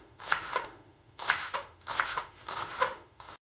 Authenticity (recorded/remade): remade